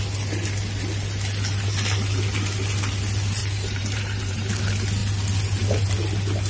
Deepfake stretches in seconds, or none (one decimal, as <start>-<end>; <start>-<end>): 3.4-4.5